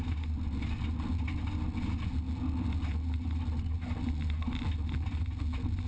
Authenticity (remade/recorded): recorded